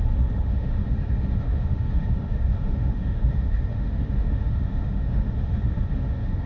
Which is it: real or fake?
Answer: fake